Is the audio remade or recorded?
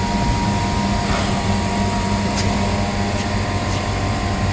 recorded